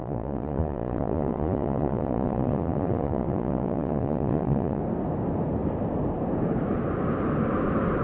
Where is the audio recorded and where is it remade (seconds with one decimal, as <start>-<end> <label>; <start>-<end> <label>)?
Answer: 0.0-4.8 remade; 4.8-8.0 recorded